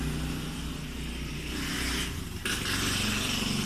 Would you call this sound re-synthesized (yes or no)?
no